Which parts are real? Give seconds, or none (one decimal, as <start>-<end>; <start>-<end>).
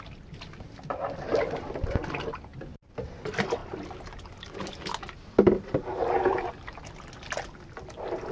0.0-8.3